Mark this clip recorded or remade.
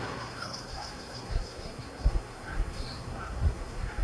remade